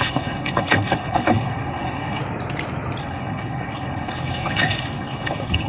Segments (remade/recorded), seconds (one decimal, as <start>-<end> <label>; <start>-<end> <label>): 0.0-2.2 remade; 2.2-3.0 recorded; 3.0-5.7 remade